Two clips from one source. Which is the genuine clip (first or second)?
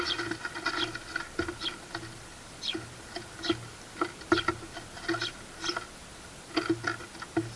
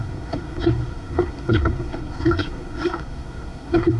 first